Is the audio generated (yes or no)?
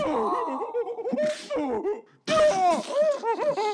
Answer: no